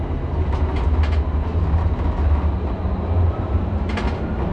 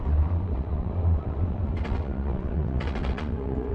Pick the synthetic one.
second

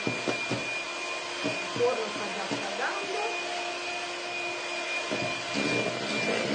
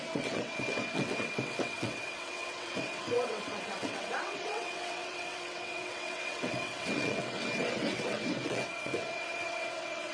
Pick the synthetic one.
second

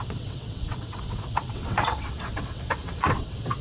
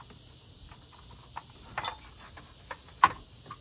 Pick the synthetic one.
first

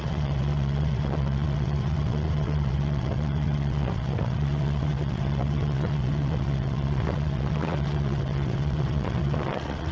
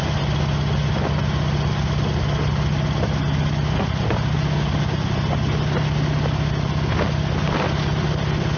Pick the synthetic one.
first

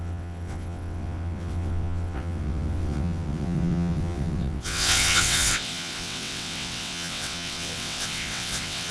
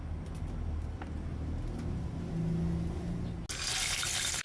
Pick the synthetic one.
first